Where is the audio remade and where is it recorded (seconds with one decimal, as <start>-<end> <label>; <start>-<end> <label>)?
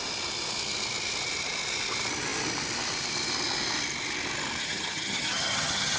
0.0-4.6 recorded; 4.6-6.0 remade